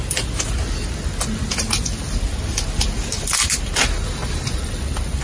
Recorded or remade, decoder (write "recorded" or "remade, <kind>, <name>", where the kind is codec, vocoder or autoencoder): recorded